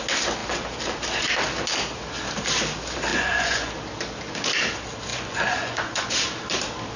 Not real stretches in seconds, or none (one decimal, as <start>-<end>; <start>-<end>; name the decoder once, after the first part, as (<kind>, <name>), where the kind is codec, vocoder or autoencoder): 3.1-3.7 (vocoder, Vocos); 5.1-6.1